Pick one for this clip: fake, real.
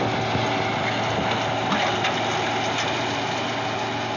real